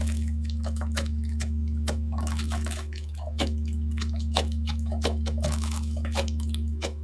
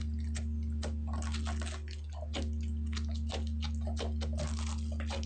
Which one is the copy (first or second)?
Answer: first